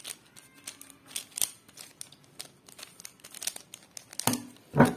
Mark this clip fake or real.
real